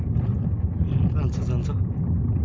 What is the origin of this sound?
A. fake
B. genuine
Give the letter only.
B